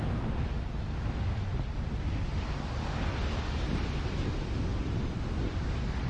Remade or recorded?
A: recorded